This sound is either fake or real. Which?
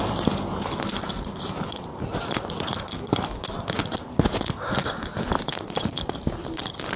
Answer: real